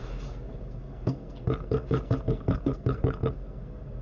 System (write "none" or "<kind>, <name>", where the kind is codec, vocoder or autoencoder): codec, SNAC